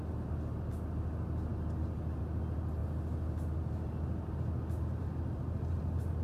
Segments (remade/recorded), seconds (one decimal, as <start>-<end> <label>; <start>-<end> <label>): 0.0-6.2 recorded